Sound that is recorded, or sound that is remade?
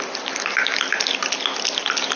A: recorded